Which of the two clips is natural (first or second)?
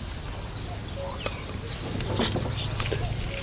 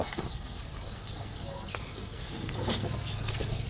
first